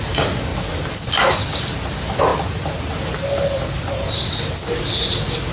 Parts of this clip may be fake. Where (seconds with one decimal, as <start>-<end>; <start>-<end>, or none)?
none